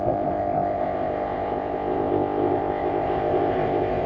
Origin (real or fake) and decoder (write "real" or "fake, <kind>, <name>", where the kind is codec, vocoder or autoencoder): fake, codec, ZipCodec